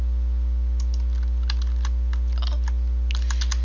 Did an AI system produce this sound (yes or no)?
no